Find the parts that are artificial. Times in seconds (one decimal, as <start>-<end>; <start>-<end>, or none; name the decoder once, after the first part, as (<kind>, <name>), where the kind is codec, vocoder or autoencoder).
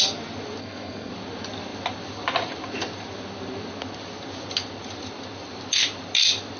0.6-1.1 (codec, SNAC)